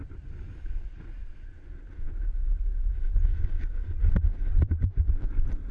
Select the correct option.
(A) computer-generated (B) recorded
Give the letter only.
B